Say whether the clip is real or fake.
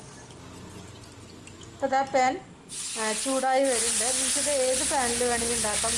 real